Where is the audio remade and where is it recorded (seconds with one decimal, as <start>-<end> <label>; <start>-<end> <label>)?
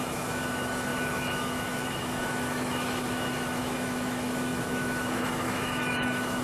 0.0-6.4 remade